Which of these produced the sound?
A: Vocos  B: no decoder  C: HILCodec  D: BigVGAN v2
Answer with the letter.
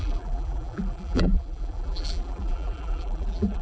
D